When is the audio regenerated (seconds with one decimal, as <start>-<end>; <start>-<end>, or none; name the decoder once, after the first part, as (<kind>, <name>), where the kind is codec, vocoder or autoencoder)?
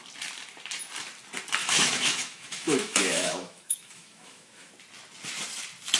1.6-4.7 (autoencoder, DAC-VAE)